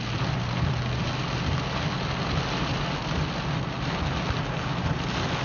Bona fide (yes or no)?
yes